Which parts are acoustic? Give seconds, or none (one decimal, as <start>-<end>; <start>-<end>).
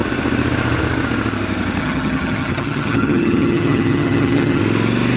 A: 0.0-1.8; 4.6-5.2